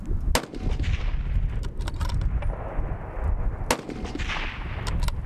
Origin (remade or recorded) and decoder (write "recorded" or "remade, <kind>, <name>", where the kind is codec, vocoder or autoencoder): recorded